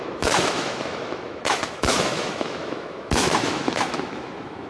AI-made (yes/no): yes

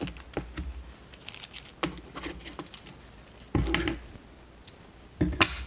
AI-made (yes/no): no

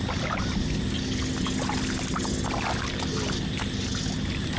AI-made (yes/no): no